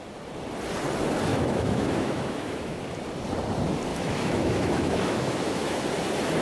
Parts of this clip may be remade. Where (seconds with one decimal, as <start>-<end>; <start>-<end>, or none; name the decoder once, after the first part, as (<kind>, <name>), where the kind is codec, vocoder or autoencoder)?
1.3-2.8 (autoencoder, DAC-VAE); 3.9-5.8